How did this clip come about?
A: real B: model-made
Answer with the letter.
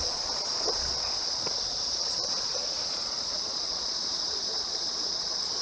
B